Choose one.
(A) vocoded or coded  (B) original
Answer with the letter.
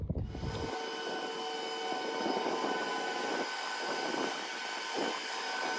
B